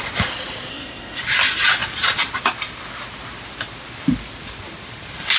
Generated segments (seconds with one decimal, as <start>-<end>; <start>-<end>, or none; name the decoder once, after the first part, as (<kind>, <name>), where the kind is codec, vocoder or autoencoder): 0.7-1.2 (codec, SNAC)